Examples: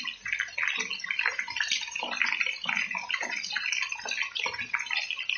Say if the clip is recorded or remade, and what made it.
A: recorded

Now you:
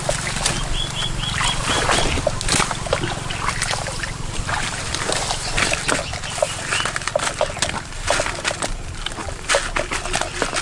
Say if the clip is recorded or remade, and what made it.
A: recorded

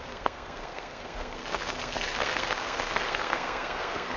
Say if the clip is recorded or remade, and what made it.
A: remade, codec, SNAC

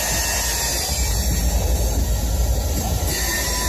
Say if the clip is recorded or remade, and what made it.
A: recorded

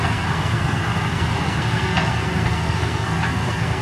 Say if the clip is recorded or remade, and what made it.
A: remade, codec, SNAC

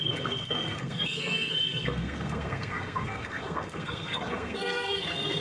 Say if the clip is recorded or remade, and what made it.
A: remade, codec, SNAC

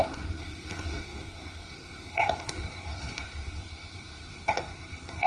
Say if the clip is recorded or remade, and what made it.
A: remade, codec, SNAC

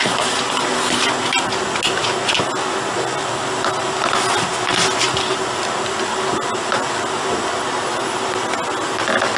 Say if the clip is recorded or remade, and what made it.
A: recorded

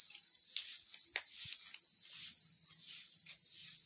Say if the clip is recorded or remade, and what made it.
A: recorded